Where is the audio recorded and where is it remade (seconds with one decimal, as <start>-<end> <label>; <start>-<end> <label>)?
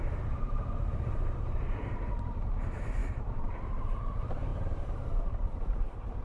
0.0-6.2 remade